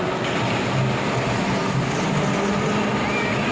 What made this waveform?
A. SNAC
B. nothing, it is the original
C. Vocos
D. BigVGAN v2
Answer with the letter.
B